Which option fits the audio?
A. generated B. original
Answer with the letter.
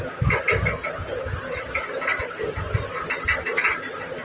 B